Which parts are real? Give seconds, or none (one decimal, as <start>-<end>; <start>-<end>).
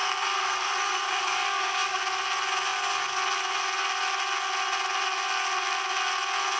2.0-6.6